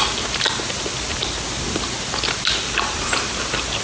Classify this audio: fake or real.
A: real